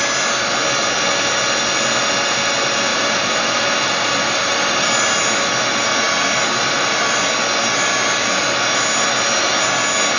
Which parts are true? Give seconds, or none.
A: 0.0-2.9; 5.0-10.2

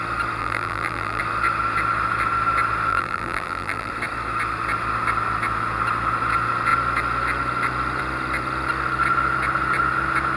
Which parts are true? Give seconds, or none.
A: 0.0-0.4; 1.2-2.9; 3.9-10.4

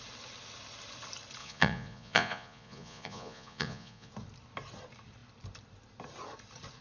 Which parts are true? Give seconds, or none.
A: 0.0-1.4; 4.1-6.8

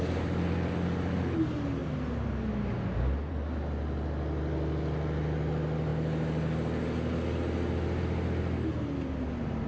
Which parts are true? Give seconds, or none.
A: 0.0-9.7